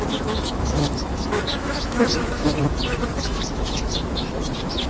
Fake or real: fake